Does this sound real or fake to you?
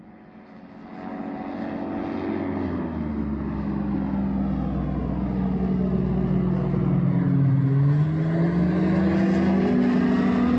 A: real